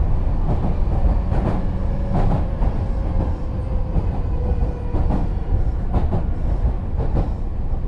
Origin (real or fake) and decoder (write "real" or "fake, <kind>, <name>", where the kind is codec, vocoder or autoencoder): real